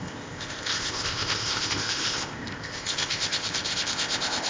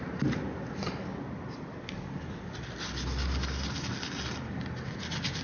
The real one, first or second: second